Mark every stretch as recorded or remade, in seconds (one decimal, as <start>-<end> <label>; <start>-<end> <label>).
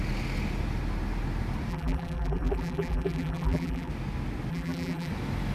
0.0-1.7 recorded; 1.7-3.9 remade; 3.9-4.5 recorded; 4.5-5.1 remade; 5.1-5.5 recorded